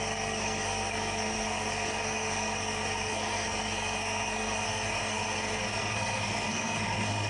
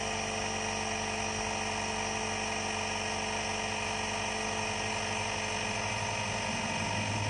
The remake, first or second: first